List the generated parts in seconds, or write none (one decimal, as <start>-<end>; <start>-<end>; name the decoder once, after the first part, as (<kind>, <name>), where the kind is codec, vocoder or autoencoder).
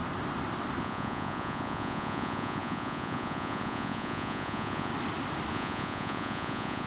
0.8-4.9 (vocoder, Vocos); 5.5-6.9